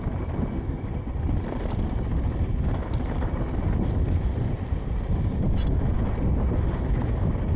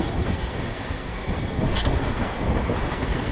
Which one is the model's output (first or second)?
second